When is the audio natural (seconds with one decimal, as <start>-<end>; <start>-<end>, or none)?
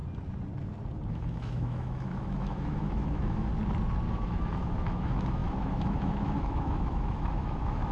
0.0-1.1; 3.5-4.1